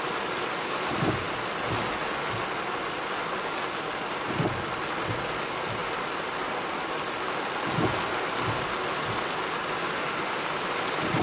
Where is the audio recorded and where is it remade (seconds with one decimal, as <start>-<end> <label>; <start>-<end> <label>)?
0.0-11.2 recorded